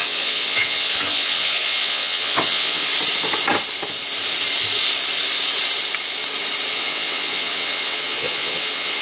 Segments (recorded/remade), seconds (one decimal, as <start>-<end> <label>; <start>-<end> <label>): 0.0-2.9 remade; 2.9-6.7 recorded; 6.7-9.0 remade